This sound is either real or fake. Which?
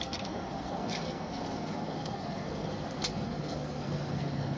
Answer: fake